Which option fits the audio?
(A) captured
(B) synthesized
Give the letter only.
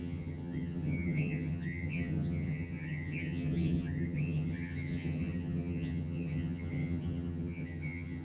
B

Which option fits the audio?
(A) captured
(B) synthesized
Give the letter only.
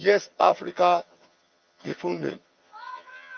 B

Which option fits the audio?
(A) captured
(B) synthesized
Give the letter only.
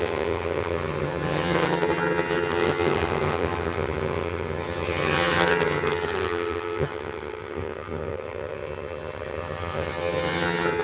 B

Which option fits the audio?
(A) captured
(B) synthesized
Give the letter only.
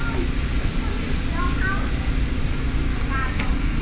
A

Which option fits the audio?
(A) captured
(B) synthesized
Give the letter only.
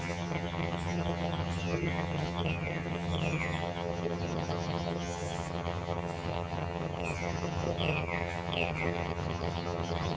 B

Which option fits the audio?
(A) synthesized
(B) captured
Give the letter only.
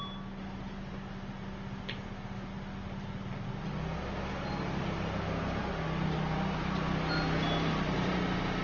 B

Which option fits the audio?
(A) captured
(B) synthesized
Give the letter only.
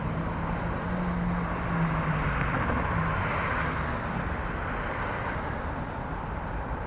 A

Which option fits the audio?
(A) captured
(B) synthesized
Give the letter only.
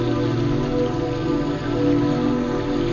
A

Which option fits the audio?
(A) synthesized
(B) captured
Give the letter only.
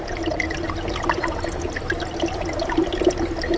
B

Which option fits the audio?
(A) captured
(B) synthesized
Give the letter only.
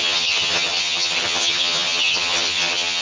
B